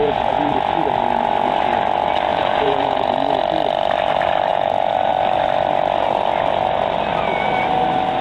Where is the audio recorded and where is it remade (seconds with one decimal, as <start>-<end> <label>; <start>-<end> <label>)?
0.0-0.5 remade; 0.5-2.3 recorded; 2.3-3.4 remade; 3.4-4.5 recorded; 4.5-5.1 remade; 5.1-8.2 recorded